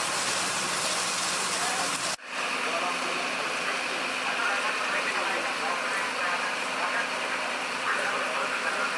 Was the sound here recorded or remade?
recorded